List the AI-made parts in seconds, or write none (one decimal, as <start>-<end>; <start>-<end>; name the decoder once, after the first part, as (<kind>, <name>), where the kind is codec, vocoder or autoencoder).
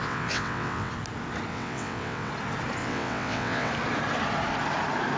0.0-0.9 (vocoder, WaveNeXt); 1.5-2.3; 2.8-3.7